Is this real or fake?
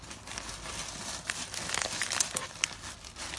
real